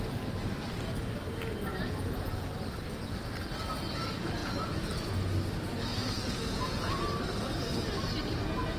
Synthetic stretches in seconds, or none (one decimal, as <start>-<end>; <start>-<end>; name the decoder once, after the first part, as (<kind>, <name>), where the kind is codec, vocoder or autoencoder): 1.7-2.3 (vocoder, Vocos); 4.4-5.1; 6.0-7.0